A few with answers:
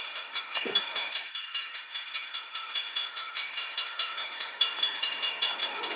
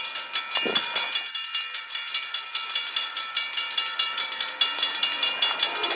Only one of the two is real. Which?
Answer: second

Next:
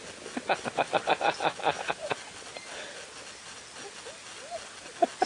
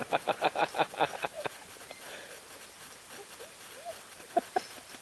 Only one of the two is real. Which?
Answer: first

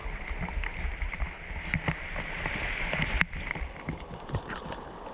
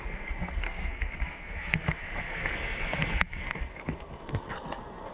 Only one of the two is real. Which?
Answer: first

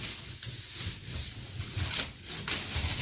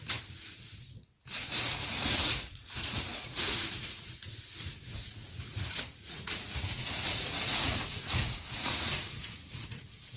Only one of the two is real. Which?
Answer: first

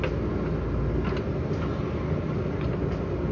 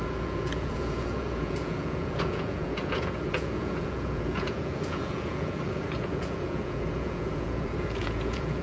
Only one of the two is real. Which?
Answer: first